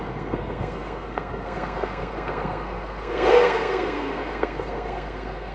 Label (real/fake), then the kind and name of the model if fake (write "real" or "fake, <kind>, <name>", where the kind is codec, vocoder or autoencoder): fake, codec, SNAC